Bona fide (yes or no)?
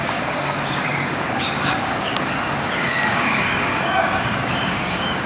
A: no